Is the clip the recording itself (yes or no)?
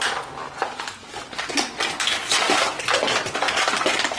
yes